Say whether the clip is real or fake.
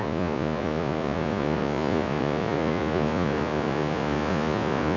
fake